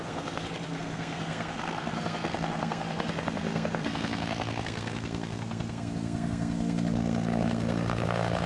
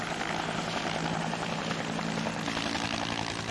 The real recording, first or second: second